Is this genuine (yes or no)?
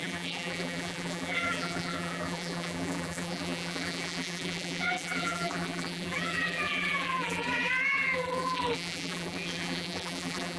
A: no